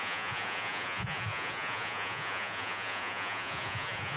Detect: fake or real fake